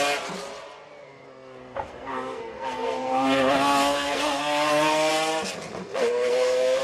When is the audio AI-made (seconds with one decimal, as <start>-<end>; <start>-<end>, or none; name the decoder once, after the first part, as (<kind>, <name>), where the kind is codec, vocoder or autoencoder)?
1.0-5.1 (codec, SNAC); 5.8-6.8